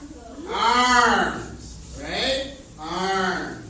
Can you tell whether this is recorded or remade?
remade